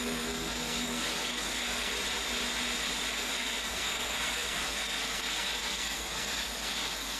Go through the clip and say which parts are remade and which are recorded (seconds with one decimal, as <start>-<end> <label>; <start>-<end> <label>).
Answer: 0.0-1.9 remade; 1.9-3.1 recorded; 3.1-7.2 remade